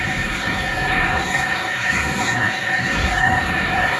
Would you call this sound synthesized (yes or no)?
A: yes